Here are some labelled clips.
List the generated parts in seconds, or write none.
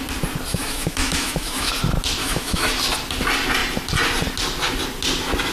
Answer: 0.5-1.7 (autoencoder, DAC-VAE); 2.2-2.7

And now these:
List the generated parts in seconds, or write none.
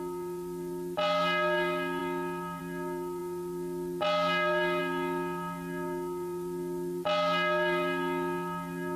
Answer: none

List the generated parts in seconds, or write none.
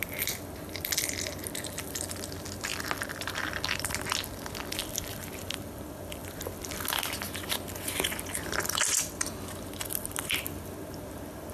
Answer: 4.8-6.8 (vocoder, BigVGAN v2)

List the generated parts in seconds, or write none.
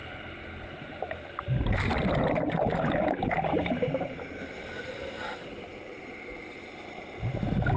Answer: 5.7-7.0 (vocoder, BigVGAN v2)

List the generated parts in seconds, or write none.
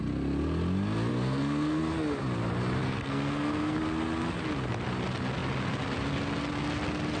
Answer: 1.1-1.8 (codec, SNAC); 2.8-3.8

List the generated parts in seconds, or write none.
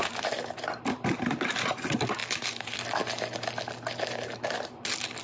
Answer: none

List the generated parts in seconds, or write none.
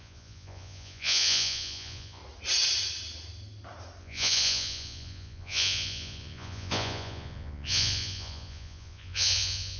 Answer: 0.0-2.2 (vocoder, Vocos); 4.0-9.8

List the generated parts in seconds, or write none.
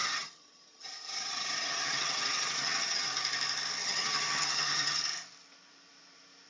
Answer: 0.0-3.1 (vocoder, HiFi-GAN); 3.8-5.0